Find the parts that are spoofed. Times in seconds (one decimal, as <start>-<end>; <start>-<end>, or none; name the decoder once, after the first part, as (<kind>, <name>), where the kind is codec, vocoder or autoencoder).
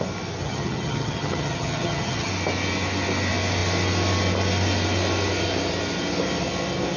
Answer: 0.4-2.3 (vocoder, HiFi-GAN)